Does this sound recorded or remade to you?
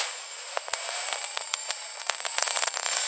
remade